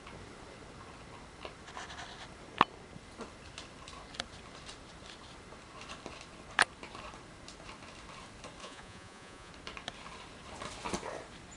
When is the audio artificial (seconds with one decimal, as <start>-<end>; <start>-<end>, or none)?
8.6-9.5